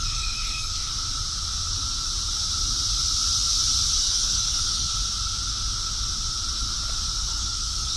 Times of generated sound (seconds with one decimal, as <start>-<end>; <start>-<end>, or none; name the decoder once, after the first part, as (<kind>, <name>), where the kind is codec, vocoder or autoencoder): 0.0-0.8 (codec, DAC); 4.0-4.9; 7.2-8.0